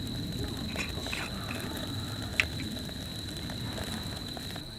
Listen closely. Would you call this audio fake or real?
real